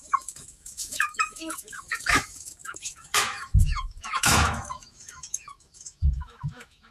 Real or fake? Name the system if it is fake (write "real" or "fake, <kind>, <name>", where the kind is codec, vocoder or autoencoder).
fake, autoencoder, DAC-VAE